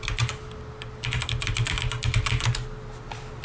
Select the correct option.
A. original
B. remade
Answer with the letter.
A